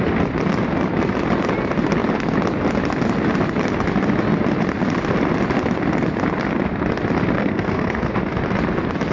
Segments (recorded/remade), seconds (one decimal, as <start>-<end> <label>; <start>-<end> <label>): 0.0-7.4 recorded; 7.4-8.1 remade; 8.1-9.1 recorded